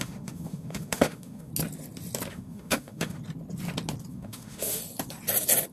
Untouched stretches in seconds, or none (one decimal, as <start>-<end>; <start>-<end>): 1.5-2.3; 3.2-4.1; 4.8-5.7